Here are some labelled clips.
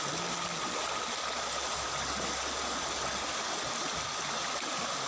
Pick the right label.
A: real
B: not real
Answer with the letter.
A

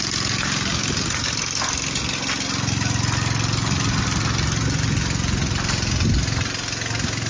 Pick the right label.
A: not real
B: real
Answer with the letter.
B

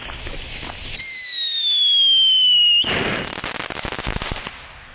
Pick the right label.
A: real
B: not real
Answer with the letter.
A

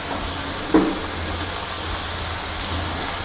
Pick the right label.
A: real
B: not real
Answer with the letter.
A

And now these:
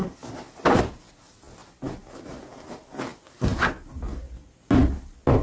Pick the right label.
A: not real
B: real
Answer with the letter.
B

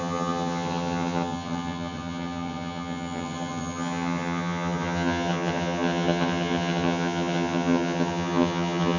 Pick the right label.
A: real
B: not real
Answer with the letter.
B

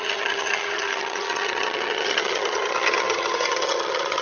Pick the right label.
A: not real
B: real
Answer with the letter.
A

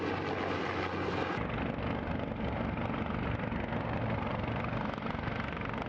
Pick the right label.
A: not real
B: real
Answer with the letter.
B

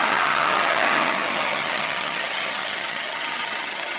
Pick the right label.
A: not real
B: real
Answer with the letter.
A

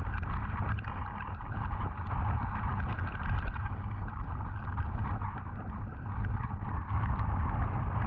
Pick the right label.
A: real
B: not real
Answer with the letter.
A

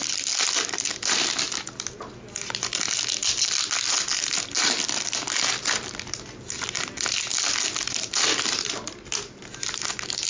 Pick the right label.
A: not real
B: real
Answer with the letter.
B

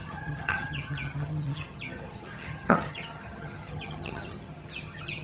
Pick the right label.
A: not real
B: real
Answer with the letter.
A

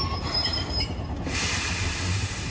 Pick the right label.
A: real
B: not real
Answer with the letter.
A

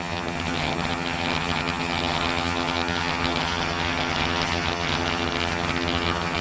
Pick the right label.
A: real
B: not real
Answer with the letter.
B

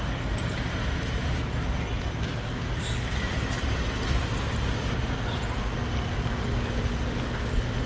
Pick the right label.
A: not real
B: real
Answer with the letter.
B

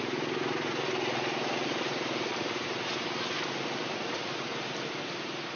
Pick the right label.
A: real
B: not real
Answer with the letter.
A